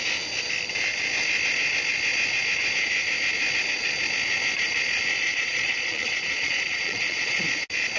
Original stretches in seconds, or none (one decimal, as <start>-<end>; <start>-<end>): 0.0-5.3; 7.4-8.0